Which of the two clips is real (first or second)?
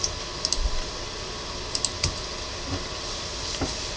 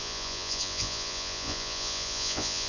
first